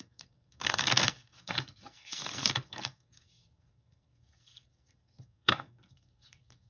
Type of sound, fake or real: fake